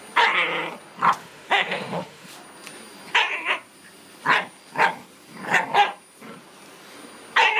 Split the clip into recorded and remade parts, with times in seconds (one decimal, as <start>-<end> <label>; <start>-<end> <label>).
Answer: 0.0-1.2 recorded; 1.2-2.3 remade; 2.3-7.6 recorded